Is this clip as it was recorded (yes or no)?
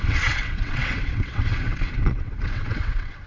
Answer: no